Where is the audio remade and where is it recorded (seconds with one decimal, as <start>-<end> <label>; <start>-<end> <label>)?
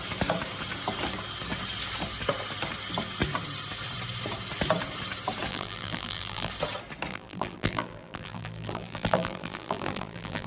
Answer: 0.0-5.5 recorded; 5.5-6.5 remade; 6.5-7.1 recorded; 7.1-10.5 remade